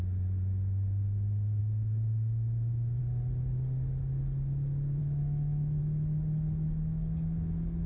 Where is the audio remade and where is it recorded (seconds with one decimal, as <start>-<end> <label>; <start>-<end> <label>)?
0.0-1.6 recorded; 1.6-3.0 remade; 3.0-5.0 recorded; 5.0-5.8 remade; 5.8-7.9 recorded